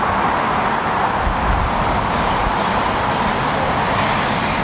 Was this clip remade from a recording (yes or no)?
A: yes